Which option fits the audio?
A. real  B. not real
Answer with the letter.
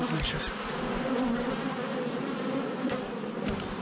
B